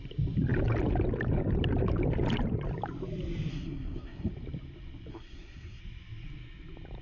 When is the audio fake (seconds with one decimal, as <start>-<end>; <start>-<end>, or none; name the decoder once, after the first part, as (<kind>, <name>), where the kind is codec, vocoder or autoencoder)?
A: 3.5-4.3 (codec, SNAC); 5.1-5.8